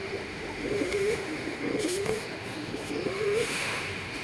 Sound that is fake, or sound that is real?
fake